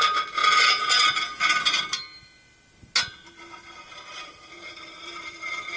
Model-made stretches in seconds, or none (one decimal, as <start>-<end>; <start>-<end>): 0.0-0.4; 3.9-5.8